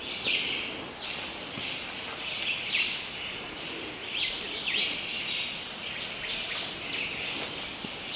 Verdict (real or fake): real